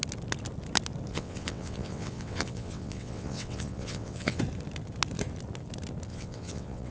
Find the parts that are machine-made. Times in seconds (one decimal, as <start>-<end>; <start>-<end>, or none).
1.1-4.4; 6.1-6.9